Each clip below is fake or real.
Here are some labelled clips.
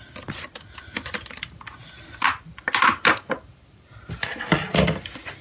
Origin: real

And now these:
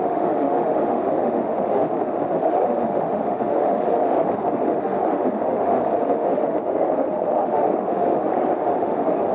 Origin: fake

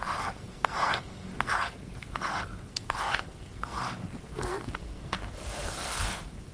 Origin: fake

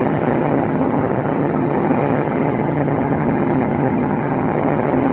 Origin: fake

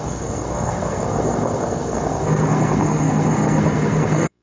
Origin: fake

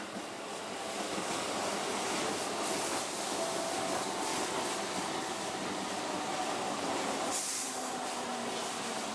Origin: real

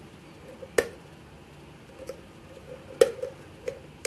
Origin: real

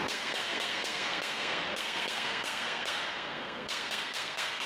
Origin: fake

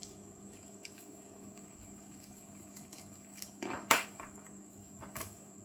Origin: fake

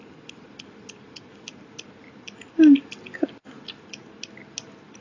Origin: real